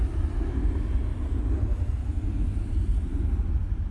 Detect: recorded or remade recorded